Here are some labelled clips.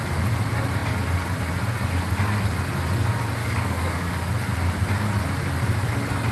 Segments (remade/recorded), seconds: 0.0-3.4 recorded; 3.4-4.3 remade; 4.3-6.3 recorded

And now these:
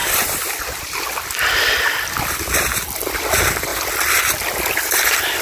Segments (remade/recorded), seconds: 0.0-5.4 recorded

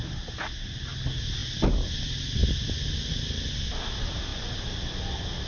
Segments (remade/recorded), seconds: 0.0-5.5 recorded

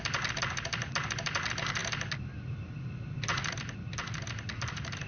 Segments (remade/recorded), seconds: 0.0-5.1 recorded